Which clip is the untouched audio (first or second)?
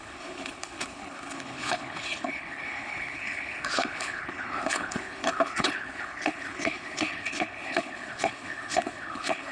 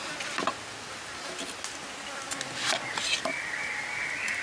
second